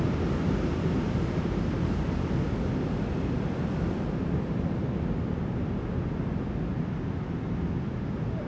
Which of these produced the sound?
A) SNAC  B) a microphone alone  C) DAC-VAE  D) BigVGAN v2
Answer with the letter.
B